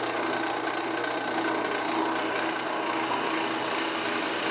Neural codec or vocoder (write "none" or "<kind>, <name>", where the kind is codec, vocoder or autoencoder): none